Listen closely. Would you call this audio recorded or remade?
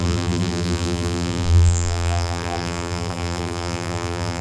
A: remade